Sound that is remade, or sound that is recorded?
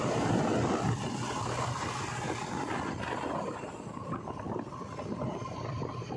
remade